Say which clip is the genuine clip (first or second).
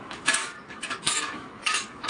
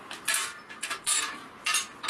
second